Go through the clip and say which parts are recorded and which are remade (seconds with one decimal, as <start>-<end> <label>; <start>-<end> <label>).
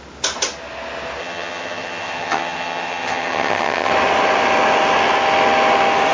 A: 0.0-1.2 recorded; 1.2-3.9 remade; 3.9-6.1 recorded